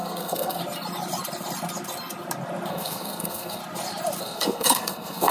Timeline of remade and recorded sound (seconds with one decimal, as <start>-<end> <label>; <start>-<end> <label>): 0.0-0.6 remade; 0.6-2.7 recorded; 2.7-3.6 remade; 3.6-4.2 recorded; 4.2-5.3 remade